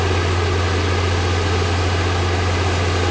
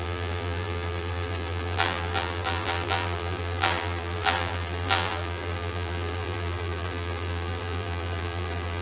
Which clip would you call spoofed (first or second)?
second